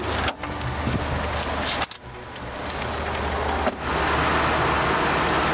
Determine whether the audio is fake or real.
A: real